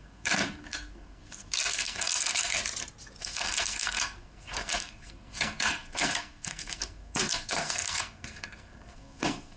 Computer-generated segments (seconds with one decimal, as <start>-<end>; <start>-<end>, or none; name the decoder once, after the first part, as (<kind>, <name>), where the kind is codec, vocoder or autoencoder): 0.0-2.6 (codec, SNAC); 3.2-9.6